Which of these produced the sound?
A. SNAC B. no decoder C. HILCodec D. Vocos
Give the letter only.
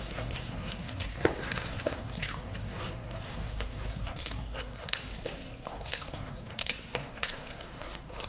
A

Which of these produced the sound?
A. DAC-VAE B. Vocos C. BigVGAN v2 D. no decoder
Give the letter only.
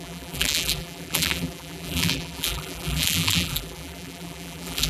C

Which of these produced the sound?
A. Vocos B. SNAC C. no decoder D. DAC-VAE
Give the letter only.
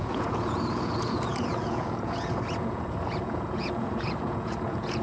A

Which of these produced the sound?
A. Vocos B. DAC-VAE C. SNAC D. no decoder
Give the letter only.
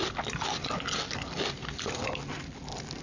D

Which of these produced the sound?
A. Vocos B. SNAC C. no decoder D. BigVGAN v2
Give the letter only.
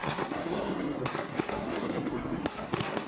B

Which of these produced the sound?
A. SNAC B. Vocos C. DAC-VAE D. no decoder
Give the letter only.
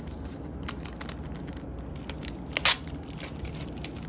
D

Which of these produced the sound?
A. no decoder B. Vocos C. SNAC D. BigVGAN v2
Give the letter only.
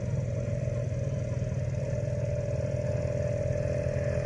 A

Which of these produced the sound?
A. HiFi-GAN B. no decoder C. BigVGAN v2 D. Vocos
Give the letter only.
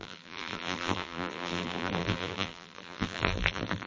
C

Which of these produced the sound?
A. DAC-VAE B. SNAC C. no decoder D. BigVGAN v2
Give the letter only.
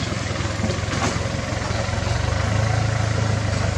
C